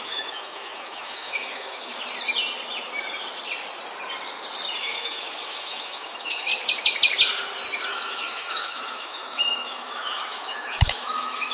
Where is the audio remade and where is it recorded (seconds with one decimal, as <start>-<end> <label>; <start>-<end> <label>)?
0.0-1.9 remade; 1.9-4.8 recorded; 4.8-6.5 remade; 6.5-7.9 recorded; 7.9-11.5 remade